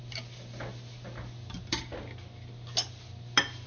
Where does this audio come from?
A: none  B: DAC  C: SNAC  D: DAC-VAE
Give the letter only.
A